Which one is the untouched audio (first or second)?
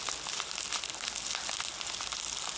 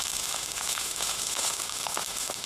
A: first